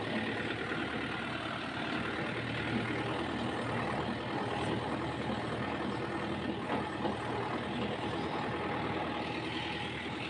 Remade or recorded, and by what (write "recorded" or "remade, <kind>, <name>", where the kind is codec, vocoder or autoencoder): recorded